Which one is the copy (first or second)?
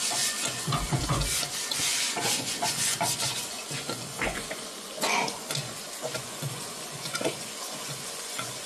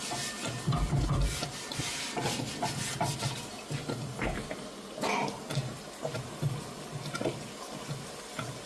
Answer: first